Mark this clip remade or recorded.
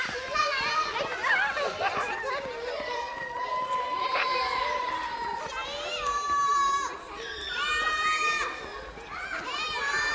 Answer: recorded